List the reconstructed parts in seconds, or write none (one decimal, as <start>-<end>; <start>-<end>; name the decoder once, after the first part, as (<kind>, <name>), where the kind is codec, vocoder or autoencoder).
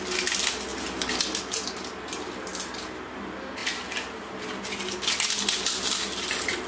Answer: none